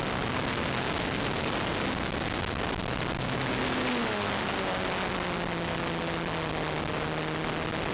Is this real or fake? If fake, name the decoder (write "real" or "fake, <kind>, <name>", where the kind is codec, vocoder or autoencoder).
real